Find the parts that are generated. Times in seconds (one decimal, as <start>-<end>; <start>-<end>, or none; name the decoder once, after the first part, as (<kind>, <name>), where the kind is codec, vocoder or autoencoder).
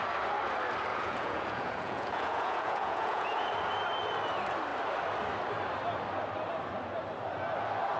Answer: 0.9-3.5 (vocoder, Vocos)